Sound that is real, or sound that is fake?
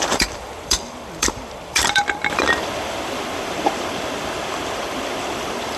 fake